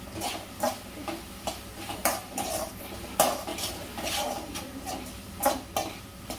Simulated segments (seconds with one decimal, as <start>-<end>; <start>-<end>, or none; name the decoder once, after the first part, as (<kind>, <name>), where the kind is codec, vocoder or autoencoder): 2.0-2.7 (vocoder, BigVGAN v2); 3.5-4.3